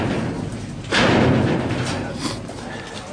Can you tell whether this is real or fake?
real